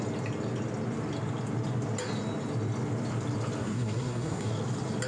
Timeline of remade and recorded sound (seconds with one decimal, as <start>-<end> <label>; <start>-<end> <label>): 0.0-3.6 recorded; 3.6-4.5 remade; 4.5-5.1 recorded